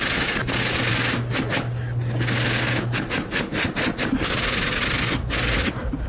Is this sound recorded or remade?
recorded